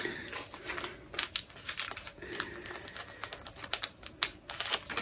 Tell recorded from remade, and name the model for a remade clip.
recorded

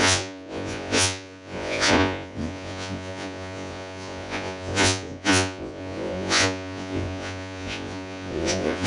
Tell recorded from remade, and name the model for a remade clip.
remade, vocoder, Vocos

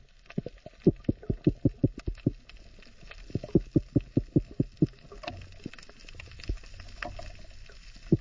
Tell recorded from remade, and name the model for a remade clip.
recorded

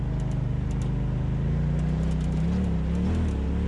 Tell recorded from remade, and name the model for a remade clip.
recorded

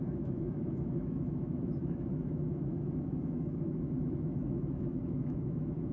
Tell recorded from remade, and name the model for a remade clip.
remade, autoencoder, DAC-VAE